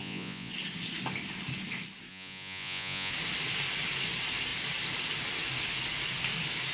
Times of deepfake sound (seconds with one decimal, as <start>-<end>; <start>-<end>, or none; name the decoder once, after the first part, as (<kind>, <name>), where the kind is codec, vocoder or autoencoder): 0.0-0.5 (vocoder, Vocos); 2.1-3.1